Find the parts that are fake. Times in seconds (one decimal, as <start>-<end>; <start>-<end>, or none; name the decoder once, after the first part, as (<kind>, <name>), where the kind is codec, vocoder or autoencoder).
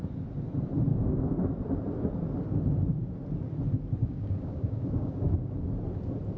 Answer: 0.9-1.4 (codec, DAC); 4.0-5.5